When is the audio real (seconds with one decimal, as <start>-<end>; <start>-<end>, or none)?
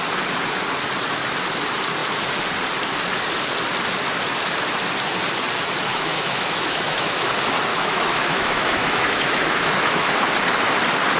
0.0-5.9; 7.3-7.7; 10.3-11.2